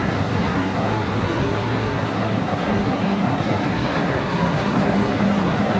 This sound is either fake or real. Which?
fake